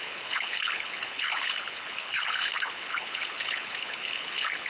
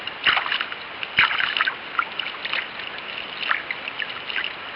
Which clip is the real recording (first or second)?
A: second